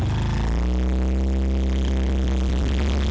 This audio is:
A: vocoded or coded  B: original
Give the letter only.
B